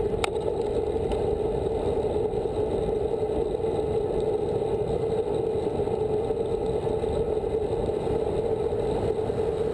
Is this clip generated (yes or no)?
no